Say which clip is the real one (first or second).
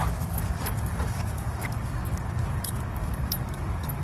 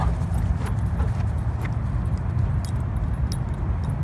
second